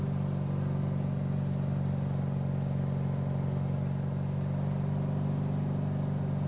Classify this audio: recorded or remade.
recorded